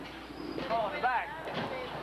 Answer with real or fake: real